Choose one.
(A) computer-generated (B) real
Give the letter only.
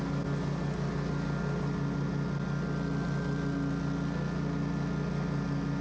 B